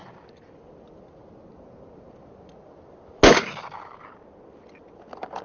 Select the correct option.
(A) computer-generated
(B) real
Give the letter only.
B